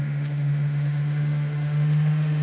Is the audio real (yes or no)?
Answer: no